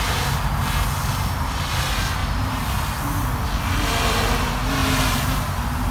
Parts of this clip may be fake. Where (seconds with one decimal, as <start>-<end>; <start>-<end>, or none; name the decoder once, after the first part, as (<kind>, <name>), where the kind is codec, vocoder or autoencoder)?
none